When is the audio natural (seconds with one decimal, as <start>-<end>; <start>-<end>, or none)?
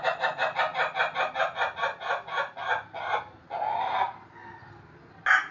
0.0-5.5